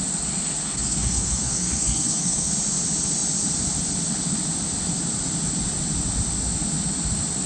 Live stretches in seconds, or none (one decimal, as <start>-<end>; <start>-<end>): 0.0-0.6; 2.5-7.5